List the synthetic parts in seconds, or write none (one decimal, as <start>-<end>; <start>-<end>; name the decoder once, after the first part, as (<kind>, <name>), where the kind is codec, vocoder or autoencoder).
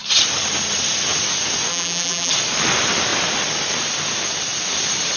1.7-2.3 (vocoder, BigVGAN v2)